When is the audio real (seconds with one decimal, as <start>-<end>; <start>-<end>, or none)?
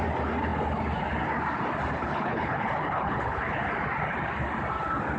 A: 0.0-2.0; 3.6-5.2